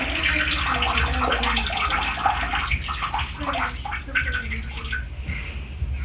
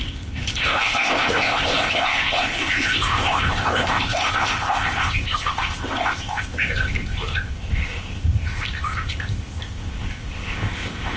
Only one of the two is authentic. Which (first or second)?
first